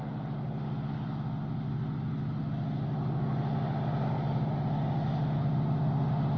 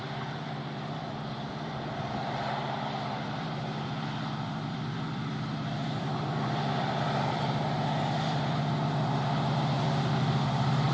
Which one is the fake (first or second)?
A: second